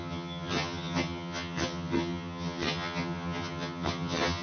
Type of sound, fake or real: fake